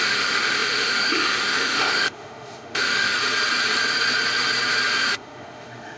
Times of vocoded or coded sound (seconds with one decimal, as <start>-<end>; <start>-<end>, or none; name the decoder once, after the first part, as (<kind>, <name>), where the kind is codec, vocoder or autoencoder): 0.0-3.2 (autoencoder, DAC-VAE); 5.0-6.0